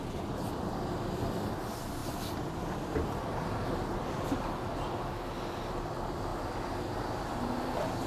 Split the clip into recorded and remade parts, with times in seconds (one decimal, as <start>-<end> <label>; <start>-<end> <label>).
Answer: 0.0-2.0 recorded; 2.0-5.3 remade; 5.3-8.1 recorded